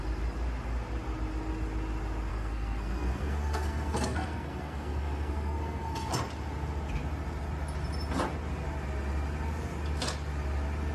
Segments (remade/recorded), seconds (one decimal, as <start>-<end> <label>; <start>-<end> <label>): 0.0-2.3 recorded; 2.3-6.1 remade; 6.1-10.9 recorded